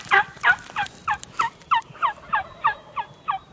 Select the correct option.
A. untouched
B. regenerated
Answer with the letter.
B